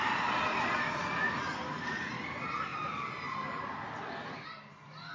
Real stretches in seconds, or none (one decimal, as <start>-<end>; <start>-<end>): 0.0-5.1